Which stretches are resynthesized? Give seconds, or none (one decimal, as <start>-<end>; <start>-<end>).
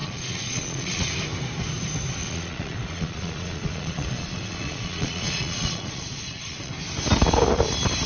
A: 0.0-1.1; 2.2-6.7